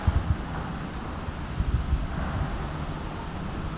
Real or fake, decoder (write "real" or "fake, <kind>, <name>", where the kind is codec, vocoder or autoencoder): real